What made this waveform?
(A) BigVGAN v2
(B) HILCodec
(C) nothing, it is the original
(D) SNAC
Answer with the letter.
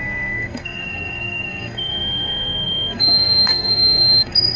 D